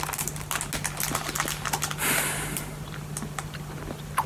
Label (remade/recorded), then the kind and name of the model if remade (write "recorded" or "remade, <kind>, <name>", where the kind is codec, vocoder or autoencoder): recorded